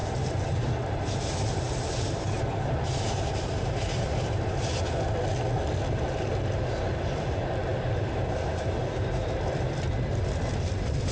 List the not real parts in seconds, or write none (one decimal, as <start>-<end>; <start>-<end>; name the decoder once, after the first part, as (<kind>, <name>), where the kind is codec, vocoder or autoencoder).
0.0-5.1 (vocoder, BigVGAN v2)